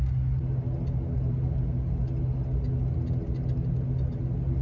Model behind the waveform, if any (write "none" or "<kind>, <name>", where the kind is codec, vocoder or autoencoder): none